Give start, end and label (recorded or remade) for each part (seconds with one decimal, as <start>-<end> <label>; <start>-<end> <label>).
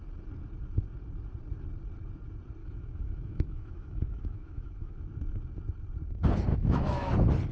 0.0-2.6 recorded; 2.6-5.0 remade; 5.0-6.5 recorded; 6.5-7.1 remade; 7.1-7.5 recorded